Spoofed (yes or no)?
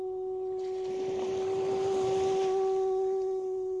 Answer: no